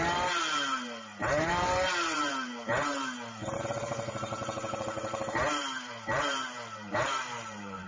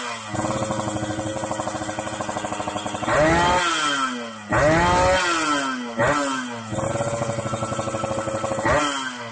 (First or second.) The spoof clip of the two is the first